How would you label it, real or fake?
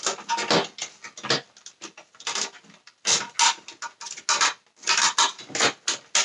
real